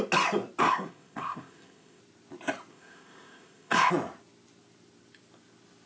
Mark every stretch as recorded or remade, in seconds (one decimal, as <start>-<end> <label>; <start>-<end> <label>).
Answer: 0.0-0.6 recorded; 0.6-2.0 remade; 2.0-2.7 recorded; 2.7-3.9 remade; 3.9-5.9 recorded